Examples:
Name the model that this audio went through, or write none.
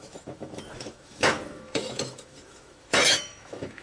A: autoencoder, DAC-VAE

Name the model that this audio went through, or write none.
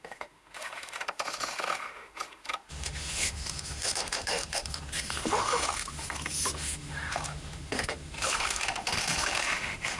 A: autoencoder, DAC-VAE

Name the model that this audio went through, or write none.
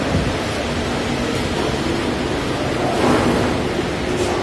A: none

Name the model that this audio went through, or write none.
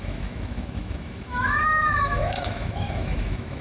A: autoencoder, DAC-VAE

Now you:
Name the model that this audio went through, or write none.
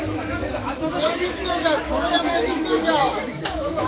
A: autoencoder, DAC-VAE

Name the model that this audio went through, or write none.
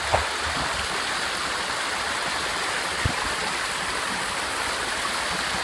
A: none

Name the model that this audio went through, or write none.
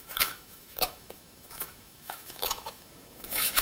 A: autoencoder, DAC-VAE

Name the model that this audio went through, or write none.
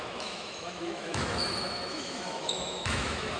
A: autoencoder, DAC-VAE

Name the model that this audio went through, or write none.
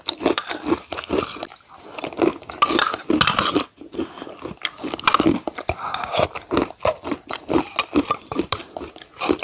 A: none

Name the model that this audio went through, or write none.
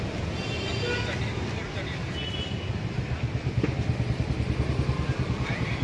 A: none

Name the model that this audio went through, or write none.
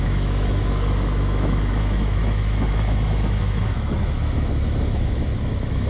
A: autoencoder, DAC-VAE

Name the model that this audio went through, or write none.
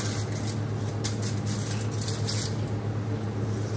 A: none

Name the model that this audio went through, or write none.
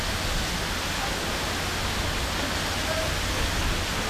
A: none